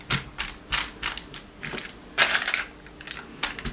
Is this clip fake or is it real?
real